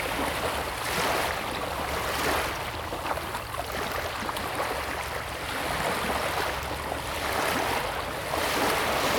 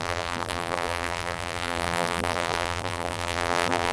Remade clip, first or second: second